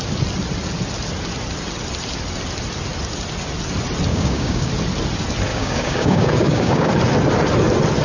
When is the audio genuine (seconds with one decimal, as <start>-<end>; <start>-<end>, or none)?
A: 0.0-4.1; 4.7-5.5; 6.9-8.0